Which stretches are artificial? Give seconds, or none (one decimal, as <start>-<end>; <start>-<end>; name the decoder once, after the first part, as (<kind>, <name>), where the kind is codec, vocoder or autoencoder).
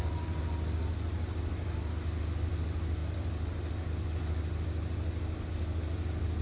none